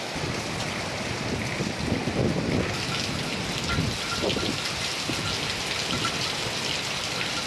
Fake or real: real